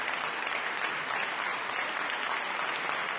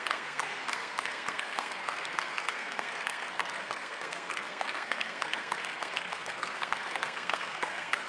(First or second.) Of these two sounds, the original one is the first